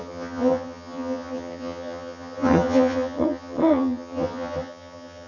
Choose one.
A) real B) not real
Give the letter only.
B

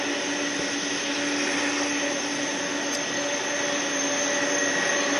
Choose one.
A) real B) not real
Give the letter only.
A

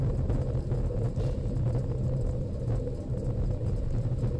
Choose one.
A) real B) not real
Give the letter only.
A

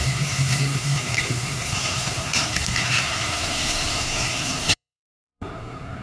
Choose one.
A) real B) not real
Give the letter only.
B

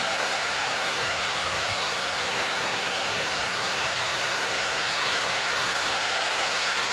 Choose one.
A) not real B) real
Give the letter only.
A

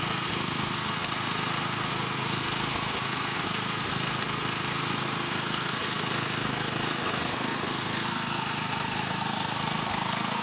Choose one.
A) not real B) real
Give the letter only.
A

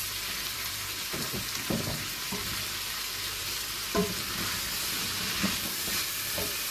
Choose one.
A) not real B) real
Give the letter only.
A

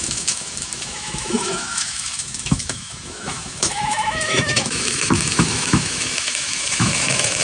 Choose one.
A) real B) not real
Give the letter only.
B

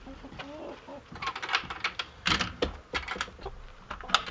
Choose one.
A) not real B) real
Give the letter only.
B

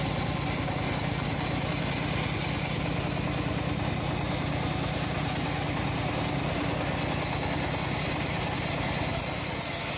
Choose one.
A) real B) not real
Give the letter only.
A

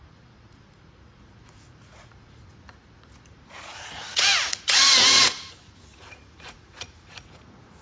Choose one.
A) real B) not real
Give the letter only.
B